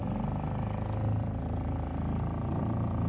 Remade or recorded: recorded